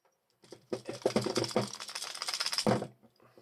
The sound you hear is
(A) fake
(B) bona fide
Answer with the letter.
B